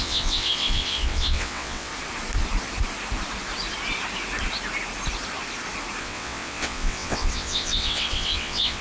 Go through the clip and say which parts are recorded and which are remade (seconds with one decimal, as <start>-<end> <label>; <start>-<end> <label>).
0.0-1.9 remade; 1.9-6.0 recorded; 6.0-8.8 remade